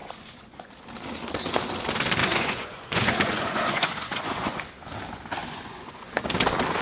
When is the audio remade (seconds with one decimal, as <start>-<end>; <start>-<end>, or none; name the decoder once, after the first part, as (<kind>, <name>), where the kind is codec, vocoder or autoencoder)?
0.0-0.7 (vocoder, Vocos); 2.2-4.6; 5.4-6.1